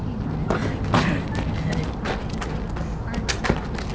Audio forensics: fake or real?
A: real